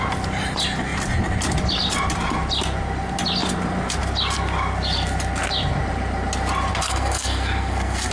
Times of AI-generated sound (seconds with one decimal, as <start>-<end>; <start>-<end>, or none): 6.7-8.1